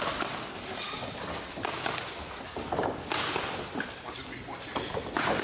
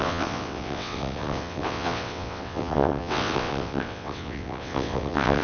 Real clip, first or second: first